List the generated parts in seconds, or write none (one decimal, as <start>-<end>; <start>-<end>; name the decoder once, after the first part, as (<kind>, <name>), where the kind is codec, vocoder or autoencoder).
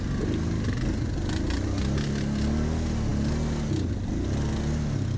none